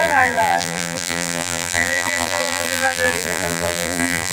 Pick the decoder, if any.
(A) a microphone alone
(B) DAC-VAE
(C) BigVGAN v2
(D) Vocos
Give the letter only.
C